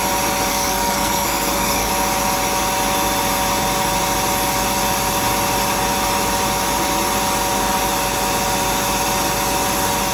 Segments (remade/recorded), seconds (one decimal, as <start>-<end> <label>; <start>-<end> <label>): 0.0-0.5 recorded; 0.5-1.9 remade; 1.9-10.1 recorded